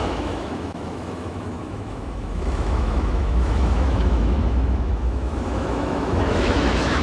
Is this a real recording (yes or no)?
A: no